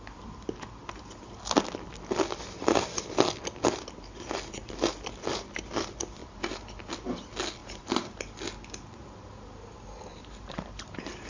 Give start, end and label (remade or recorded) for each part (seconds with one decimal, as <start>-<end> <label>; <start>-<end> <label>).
0.0-6.2 recorded; 6.2-6.9 remade; 6.9-7.6 recorded; 7.6-8.2 remade; 8.2-10.1 recorded; 10.1-11.3 remade